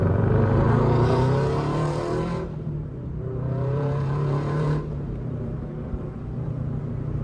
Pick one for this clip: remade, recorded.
remade